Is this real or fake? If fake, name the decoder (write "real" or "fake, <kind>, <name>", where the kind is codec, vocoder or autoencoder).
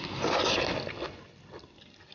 real